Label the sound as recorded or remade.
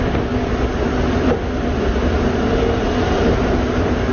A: recorded